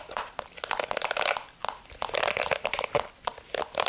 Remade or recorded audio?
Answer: recorded